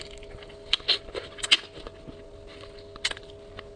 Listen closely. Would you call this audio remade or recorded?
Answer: recorded